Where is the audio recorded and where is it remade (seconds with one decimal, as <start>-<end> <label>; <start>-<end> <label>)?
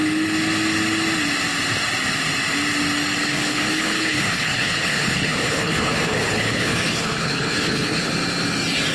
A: 0.0-3.2 recorded; 3.2-8.1 remade; 8.1-8.9 recorded